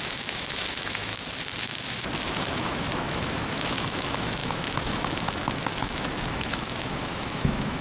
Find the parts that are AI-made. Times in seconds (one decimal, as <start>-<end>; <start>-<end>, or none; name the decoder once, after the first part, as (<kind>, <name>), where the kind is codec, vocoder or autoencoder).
0.0-1.1 (autoencoder, DAC-VAE); 1.6-7.8